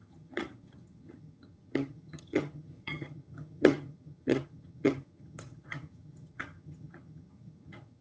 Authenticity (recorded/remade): remade